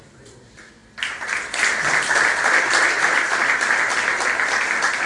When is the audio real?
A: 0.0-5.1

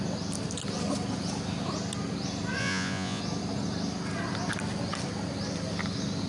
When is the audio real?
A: 0.0-2.6; 3.2-6.3

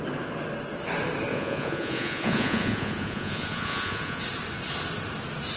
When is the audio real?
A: 0.0-1.3; 4.2-5.6

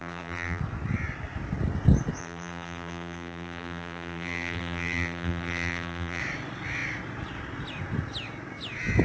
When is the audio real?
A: 0.6-2.2; 6.2-9.0

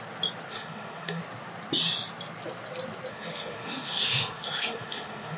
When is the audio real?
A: 0.0-0.5; 1.2-3.1

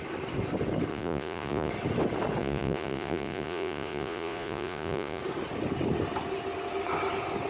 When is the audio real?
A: 0.0-0.9; 1.7-2.4; 5.2-7.5

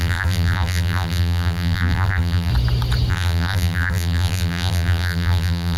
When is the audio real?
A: 2.5-3.1

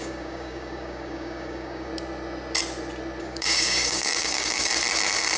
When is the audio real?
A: 1.9-3.2; 4.7-5.4